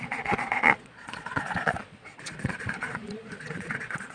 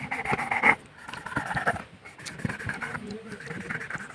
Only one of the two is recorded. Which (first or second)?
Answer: second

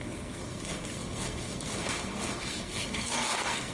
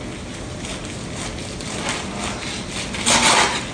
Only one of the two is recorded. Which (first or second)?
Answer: second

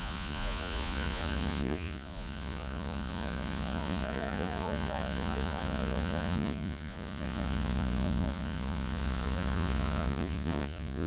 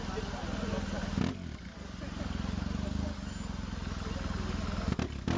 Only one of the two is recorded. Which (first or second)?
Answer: second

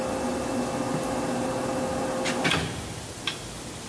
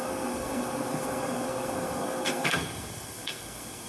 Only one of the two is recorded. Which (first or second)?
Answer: first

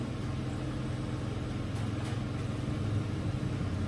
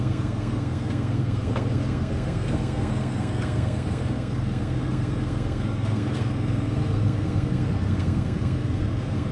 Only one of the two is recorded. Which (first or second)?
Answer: first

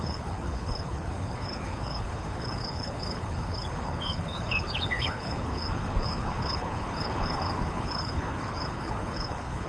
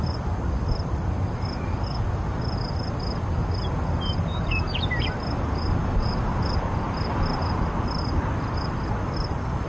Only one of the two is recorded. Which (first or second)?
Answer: second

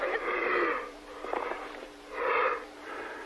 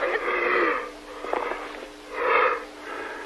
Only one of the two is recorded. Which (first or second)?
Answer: second